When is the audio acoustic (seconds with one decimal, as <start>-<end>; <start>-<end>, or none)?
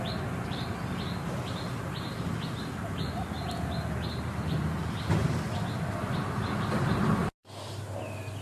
0.0-8.4